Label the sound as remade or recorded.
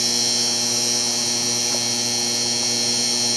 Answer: remade